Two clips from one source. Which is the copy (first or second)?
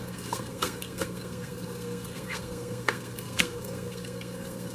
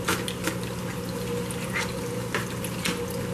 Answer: first